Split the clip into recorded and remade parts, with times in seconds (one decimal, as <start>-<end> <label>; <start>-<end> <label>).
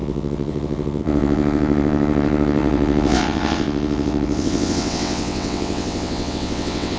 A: 0.0-7.0 remade